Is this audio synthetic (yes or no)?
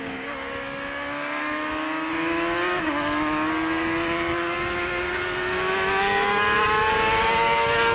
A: yes